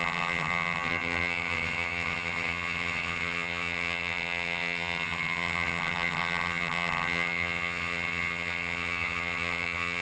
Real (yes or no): no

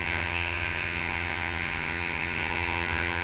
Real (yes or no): no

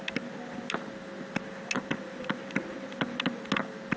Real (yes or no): yes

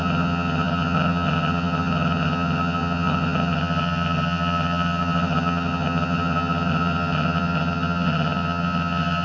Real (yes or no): no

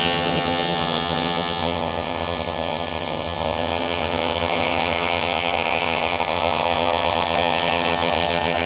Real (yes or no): no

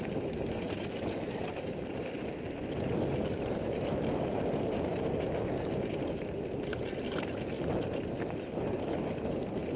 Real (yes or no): yes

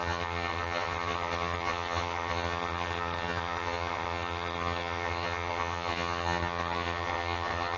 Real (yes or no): no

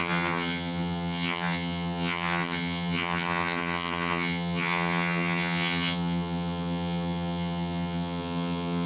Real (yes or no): no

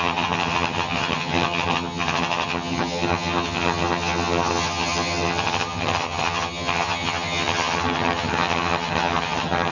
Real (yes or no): no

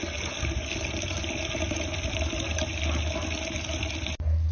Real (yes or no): yes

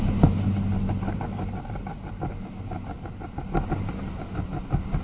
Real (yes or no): yes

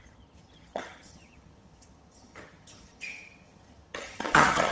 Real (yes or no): no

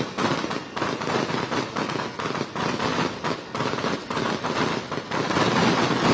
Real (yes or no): yes